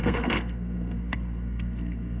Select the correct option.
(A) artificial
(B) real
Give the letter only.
A